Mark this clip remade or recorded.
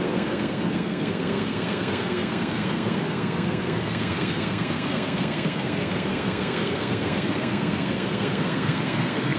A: remade